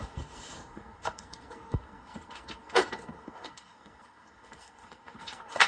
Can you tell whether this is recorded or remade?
remade